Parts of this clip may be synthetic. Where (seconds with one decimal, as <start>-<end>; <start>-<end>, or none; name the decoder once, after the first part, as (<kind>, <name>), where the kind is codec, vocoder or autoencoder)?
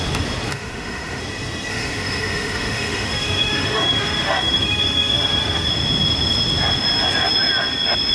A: 0.5-1.2 (autoencoder, DAC-VAE); 1.7-5.7